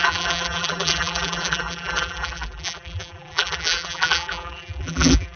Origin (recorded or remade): remade